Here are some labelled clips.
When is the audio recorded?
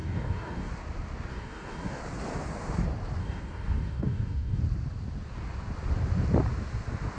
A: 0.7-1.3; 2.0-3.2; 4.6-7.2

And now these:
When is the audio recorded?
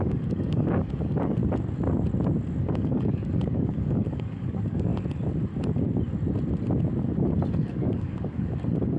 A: 1.4-2.6; 4.9-7.5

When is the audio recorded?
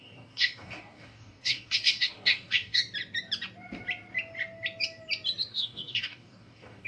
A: 2.8-5.5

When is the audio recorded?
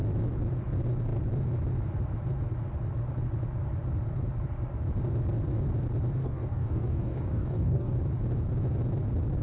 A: 0.0-6.2; 8.0-9.4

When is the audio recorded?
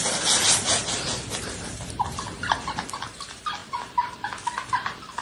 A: 0.0-5.2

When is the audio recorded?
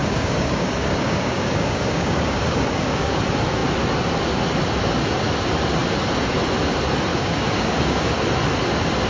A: 3.2-7.1; 8.2-9.1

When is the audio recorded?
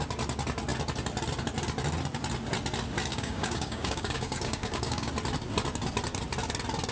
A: 0.0-3.1; 5.1-6.9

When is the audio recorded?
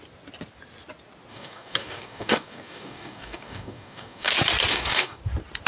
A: 0.0-1.3; 4.3-4.7; 5.2-5.7